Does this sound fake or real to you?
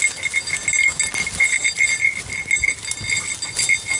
real